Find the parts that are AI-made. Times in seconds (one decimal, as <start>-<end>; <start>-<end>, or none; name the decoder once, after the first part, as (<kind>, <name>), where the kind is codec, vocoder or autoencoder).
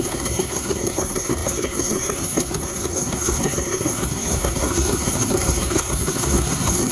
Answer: 0.0-6.9 (codec, SNAC)